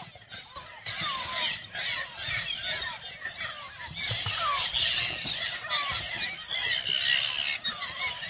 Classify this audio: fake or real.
real